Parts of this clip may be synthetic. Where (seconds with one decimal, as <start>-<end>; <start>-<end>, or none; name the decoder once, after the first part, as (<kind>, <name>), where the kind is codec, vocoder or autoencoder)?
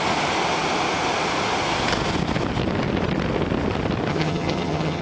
4.1-5.0 (vocoder, HiFi-GAN)